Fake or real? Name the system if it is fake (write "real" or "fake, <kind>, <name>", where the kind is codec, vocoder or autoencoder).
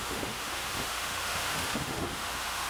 fake, autoencoder, DAC-VAE